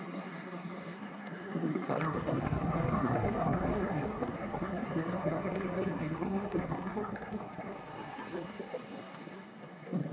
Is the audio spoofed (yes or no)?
yes